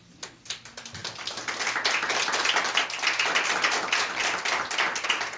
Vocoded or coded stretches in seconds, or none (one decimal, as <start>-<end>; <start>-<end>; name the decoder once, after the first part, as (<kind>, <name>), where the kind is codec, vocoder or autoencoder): none